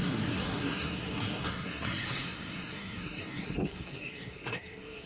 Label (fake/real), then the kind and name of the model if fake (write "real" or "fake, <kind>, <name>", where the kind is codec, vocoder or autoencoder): fake, codec, SNAC